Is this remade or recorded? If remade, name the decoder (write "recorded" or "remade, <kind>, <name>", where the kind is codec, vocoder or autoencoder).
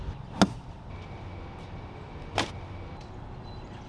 recorded